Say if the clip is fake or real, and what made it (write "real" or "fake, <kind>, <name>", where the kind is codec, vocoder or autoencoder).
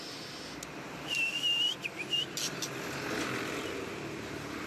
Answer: real